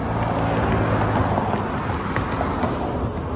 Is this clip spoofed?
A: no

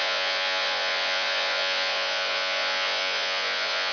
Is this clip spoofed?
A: yes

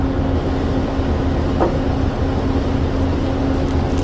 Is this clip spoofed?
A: no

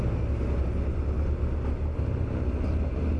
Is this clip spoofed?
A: no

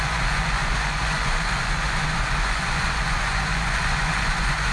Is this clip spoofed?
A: yes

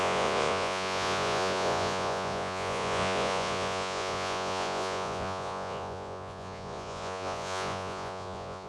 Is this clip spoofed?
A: yes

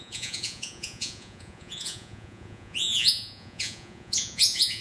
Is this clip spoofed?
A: yes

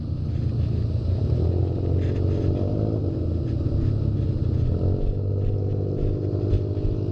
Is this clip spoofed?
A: no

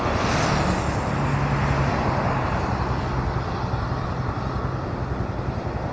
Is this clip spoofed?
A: no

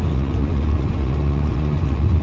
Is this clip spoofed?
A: yes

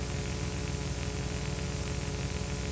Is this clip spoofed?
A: no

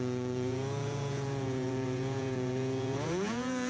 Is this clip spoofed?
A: yes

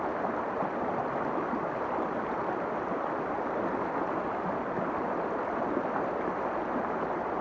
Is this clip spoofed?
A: no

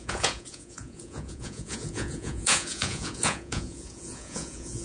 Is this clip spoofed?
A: yes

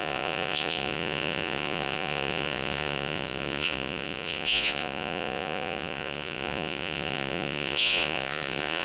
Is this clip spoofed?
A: yes